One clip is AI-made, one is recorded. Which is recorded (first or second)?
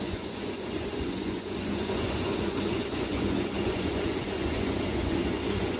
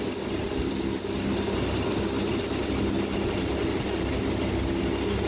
second